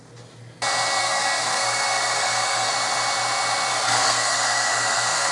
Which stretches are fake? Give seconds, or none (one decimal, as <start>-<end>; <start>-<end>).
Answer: 1.0-2.7; 3.7-5.3